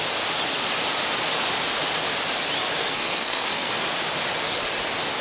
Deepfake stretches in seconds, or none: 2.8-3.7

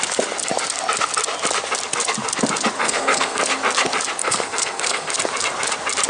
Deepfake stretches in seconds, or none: 2.8-3.4; 4.2-5.1